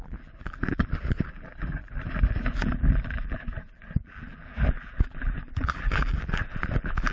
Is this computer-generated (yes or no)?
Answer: yes